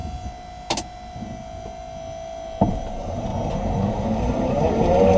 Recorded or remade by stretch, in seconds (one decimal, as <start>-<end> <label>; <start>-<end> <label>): 0.0-2.7 recorded; 2.7-3.3 remade; 3.3-3.9 recorded; 3.9-5.2 remade